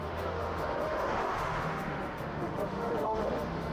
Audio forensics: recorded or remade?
remade